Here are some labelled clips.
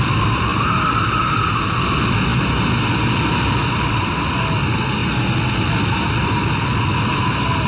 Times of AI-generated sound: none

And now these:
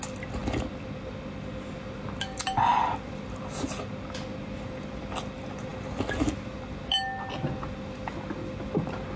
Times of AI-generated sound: none